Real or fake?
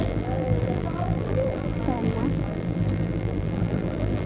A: fake